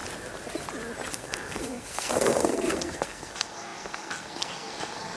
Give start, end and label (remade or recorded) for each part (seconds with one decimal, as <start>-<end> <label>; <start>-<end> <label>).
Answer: 0.0-1.1 recorded; 1.1-5.2 remade